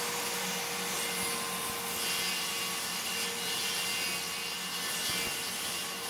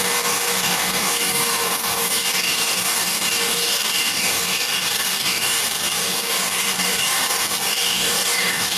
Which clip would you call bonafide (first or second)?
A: first